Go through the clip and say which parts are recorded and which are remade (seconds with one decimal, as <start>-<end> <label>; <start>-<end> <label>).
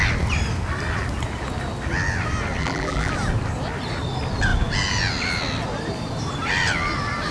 0.0-2.6 recorded; 2.6-3.1 remade; 3.1-7.3 recorded